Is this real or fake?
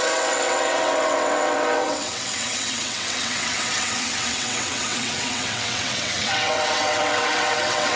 fake